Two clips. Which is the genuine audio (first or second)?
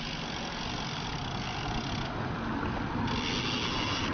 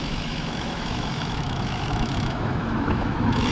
first